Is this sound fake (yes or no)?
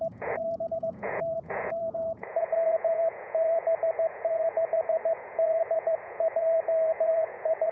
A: yes